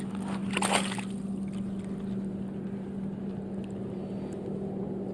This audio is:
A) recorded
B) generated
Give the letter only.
A